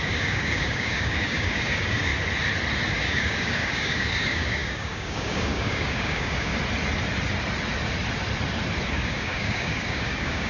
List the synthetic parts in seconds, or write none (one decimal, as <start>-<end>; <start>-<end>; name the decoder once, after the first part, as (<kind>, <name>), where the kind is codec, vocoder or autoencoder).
0.0-2.1 (codec, DAC); 2.9-6.5; 8.9-10.5